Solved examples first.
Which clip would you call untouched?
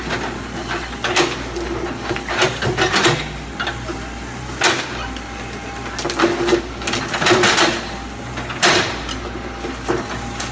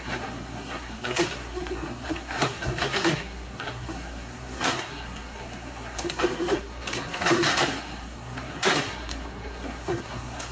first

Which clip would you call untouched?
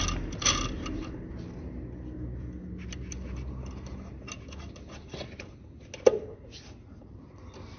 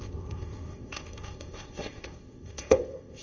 first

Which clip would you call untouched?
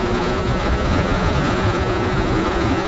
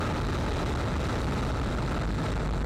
second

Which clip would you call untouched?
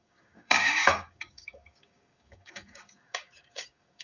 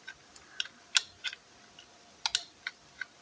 second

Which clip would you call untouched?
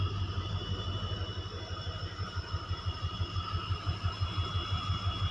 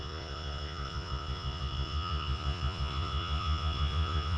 first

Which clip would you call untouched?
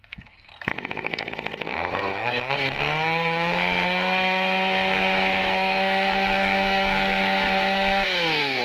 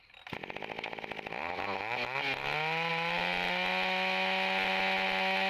second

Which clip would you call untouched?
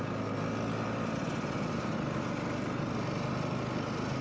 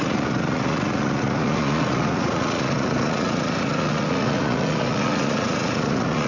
first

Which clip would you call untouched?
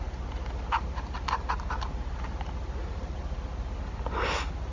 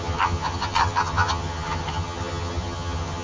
first